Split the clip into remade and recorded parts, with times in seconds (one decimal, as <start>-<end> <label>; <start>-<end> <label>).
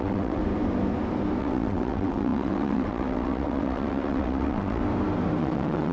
0.0-0.4 remade; 0.4-1.4 recorded; 1.4-4.8 remade; 4.8-5.4 recorded; 5.4-5.9 remade